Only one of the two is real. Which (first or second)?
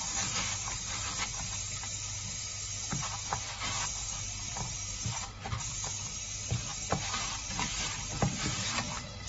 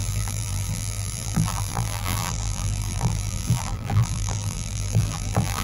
first